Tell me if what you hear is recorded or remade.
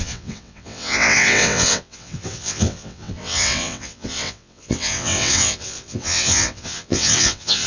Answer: remade